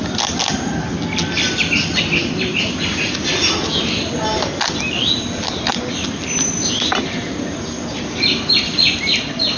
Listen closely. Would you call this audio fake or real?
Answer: real